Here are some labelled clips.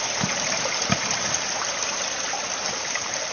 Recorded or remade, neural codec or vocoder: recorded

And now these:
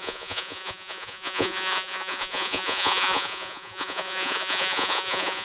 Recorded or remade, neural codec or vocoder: remade, vocoder, Vocos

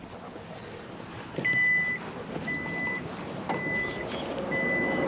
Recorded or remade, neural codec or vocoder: recorded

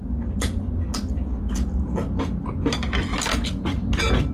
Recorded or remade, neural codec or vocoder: recorded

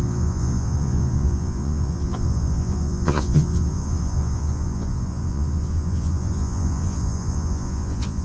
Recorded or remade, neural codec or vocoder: remade, vocoder, Vocos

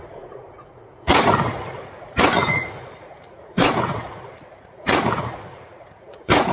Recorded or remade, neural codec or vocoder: remade, vocoder, Vocos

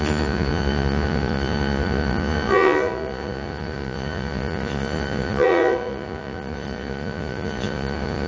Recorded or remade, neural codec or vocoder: remade, vocoder, Vocos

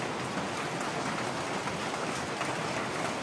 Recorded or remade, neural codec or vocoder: recorded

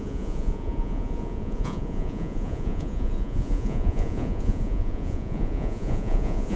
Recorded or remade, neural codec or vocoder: remade, vocoder, Vocos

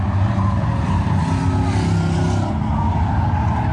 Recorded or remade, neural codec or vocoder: recorded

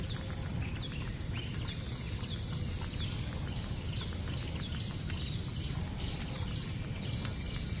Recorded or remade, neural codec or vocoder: recorded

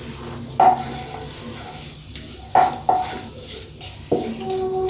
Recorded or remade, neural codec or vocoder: recorded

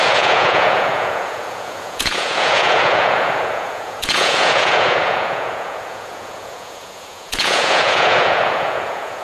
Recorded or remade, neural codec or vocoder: remade, vocoder, Vocos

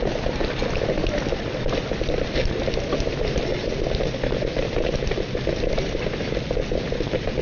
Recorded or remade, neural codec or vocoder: recorded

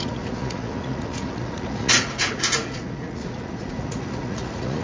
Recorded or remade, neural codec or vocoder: remade, vocoder, Vocos